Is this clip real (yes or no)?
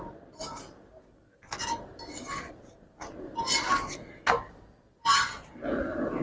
yes